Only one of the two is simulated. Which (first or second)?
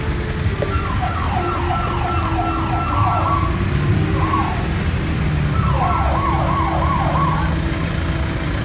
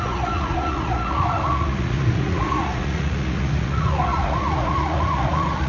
second